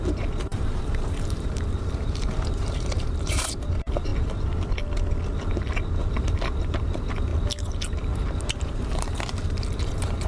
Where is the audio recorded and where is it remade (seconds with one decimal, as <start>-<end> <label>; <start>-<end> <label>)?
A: 0.0-4.1 remade; 4.1-6.2 recorded; 6.2-7.3 remade; 7.3-8.4 recorded; 8.4-10.3 remade